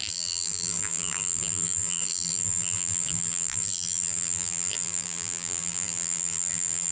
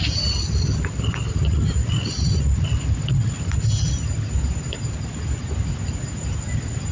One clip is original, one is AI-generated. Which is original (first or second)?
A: second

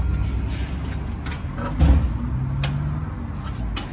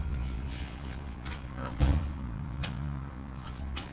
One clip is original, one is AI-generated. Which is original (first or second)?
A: first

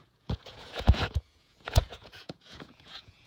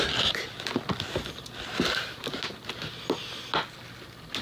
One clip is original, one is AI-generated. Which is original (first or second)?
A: second